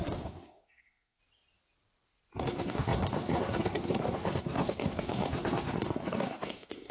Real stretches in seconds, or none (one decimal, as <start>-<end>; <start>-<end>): 1.2-2.4